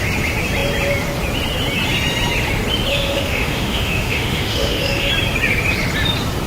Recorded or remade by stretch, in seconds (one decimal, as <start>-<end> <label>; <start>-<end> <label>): 0.0-2.9 recorded; 2.9-5.1 remade; 5.1-6.5 recorded